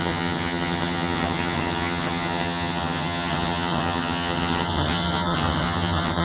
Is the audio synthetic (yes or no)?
yes